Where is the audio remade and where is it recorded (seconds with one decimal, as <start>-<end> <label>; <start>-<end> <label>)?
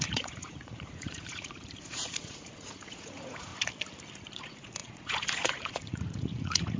0.0-3.5 remade; 3.5-4.2 recorded; 4.2-6.8 remade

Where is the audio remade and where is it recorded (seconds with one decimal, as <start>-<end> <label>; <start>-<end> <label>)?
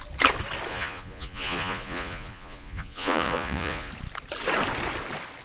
0.0-0.7 recorded; 0.7-3.9 remade; 3.9-5.4 recorded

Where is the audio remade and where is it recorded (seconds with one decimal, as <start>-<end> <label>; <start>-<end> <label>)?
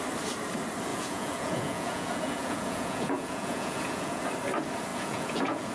0.0-0.9 recorded; 0.9-4.3 remade; 4.3-4.9 recorded; 4.9-5.7 remade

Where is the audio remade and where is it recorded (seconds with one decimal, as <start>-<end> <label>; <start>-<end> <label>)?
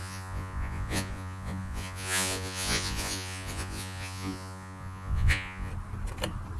0.0-5.7 remade; 5.7-6.6 recorded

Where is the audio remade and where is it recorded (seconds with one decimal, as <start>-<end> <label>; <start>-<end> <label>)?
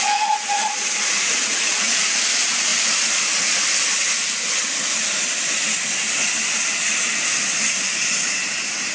0.0-2.7 remade; 2.7-7.8 recorded; 7.8-8.9 remade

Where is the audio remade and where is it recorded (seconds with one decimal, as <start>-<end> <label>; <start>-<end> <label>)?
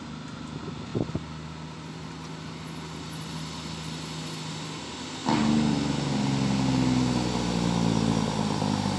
0.0-9.0 recorded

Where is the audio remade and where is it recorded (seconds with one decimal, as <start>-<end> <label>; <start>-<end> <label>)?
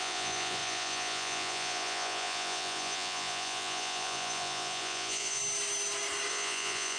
0.0-5.4 remade; 5.4-6.3 recorded; 6.3-7.0 remade